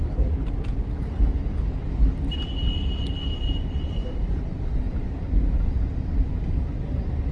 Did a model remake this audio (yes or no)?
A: no